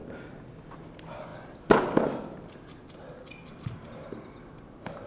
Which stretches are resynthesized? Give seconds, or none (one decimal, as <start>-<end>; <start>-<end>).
none